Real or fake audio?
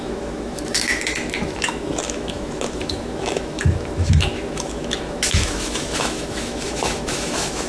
fake